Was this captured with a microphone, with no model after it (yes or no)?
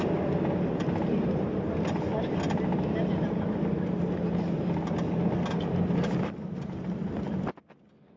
yes